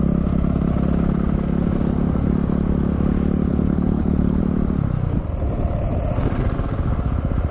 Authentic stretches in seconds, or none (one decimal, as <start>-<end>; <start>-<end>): 0.0-3.5; 4.4-7.5